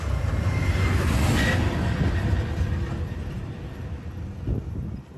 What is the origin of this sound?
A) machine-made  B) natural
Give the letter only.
B